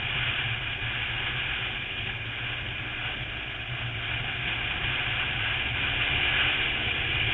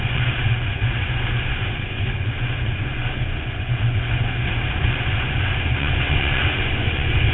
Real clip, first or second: first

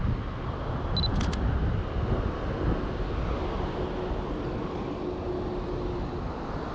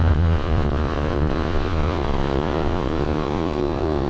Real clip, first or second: first